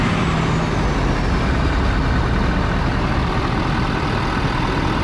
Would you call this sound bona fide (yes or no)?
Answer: yes